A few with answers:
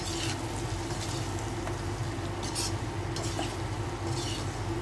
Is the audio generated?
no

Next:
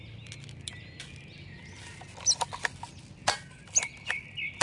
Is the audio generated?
no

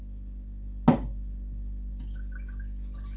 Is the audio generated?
no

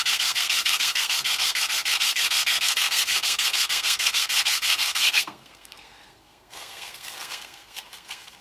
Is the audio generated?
yes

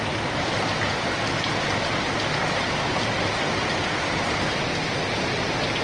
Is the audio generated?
yes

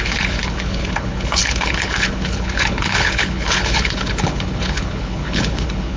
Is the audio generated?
yes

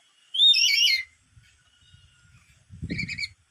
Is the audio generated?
no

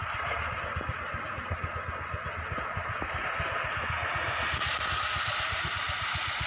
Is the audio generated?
no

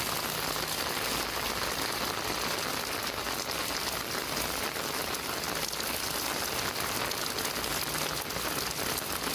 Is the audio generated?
no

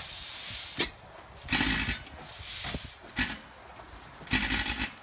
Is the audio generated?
no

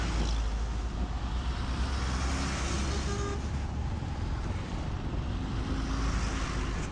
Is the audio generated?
no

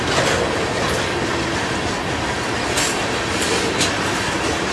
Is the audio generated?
no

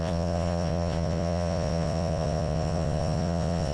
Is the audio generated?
yes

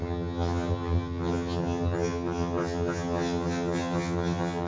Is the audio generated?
yes